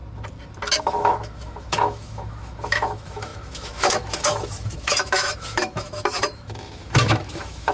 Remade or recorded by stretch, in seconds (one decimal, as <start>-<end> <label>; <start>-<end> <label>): 0.0-0.8 recorded; 0.8-7.7 remade